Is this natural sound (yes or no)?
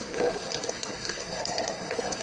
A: no